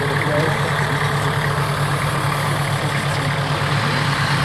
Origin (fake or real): real